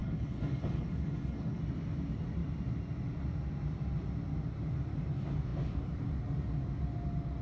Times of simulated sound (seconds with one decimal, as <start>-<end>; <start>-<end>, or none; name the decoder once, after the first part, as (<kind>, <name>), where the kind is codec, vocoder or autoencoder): 0.0-1.6 (codec, HILCodec)